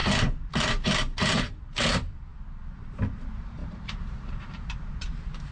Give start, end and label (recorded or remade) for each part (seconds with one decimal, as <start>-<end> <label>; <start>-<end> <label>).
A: 0.0-5.5 remade